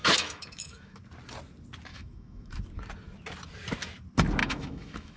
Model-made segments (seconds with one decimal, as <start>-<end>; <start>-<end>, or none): 0.0-1.0; 1.9-2.5; 4.4-5.2